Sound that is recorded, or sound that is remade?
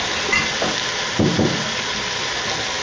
recorded